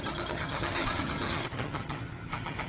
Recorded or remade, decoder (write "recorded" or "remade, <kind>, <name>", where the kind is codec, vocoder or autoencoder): remade, vocoder, HiFi-GAN